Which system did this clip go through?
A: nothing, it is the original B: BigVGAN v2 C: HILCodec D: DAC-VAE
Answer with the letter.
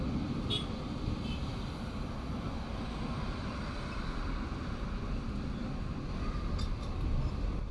A